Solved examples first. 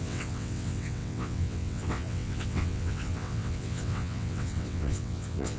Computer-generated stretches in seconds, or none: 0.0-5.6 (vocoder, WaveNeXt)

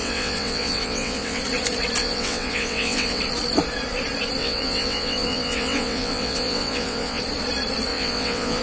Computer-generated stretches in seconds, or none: 0.0-1.4 (vocoder, WaveNeXt); 2.0-3.2; 4.4-7.2; 7.9-8.6